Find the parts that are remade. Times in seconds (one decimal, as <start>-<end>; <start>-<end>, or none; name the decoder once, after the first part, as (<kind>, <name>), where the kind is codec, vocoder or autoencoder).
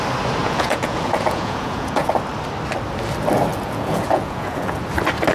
0.4-2.1 (vocoder, Vocos); 3.5-4.8